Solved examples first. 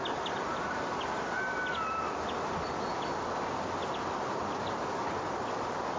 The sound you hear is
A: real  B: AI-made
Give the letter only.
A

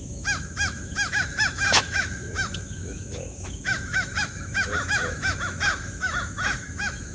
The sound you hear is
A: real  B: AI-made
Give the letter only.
B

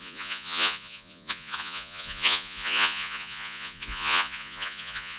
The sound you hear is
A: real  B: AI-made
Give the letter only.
B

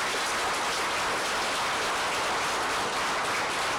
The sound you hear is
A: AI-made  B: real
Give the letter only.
B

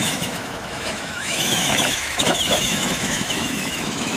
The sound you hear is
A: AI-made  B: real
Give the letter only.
A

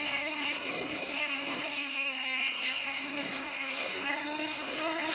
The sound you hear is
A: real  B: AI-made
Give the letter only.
B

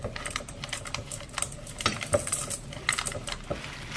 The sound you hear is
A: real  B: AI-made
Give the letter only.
A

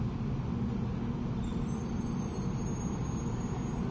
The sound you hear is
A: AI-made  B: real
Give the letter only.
B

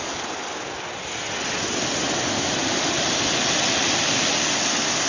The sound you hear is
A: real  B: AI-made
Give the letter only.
A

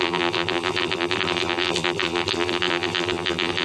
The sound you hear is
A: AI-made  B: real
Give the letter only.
A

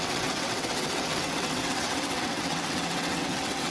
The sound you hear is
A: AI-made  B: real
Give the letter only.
A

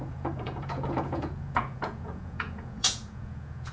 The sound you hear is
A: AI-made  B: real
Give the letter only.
A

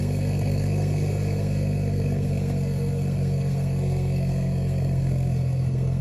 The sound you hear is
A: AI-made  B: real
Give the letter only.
A